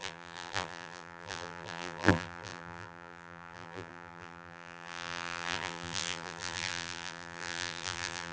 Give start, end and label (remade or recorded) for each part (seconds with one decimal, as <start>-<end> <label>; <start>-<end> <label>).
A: 0.0-8.3 remade